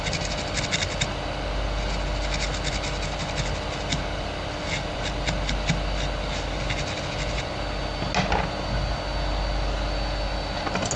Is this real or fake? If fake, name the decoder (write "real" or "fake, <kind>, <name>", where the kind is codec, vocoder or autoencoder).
real